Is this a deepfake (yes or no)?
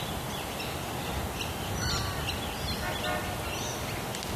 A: no